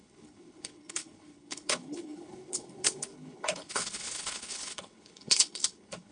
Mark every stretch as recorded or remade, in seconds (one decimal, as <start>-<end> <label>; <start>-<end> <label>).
0.0-6.1 remade